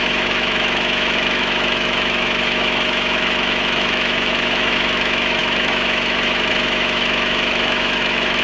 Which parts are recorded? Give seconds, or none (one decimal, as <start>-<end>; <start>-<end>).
none